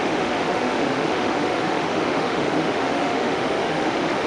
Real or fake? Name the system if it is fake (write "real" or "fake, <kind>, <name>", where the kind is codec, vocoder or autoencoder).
fake, autoencoder, DAC-VAE